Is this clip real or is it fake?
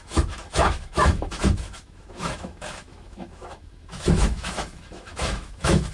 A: fake